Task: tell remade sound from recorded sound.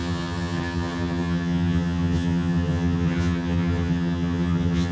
remade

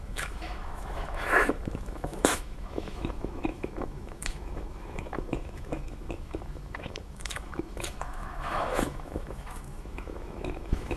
remade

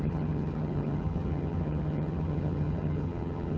remade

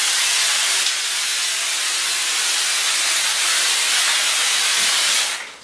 recorded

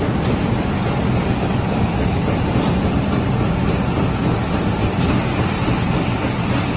recorded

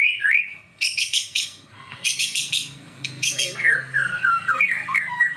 remade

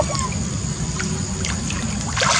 recorded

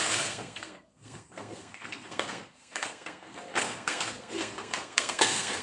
remade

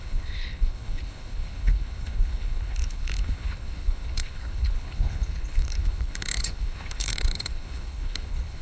remade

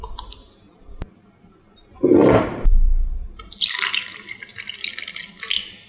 recorded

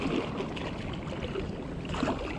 recorded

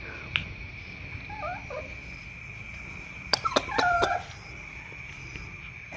recorded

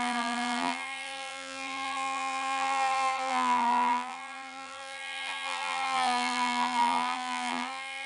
remade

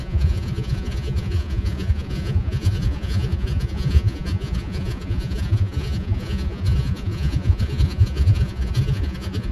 remade